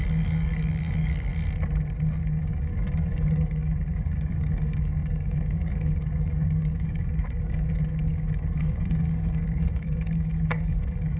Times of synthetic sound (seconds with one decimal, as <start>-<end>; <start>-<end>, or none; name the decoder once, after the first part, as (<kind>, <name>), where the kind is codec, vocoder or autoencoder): 0.0-1.3 (codec, DAC); 2.2-11.2